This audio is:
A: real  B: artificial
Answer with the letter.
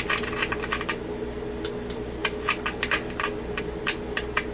A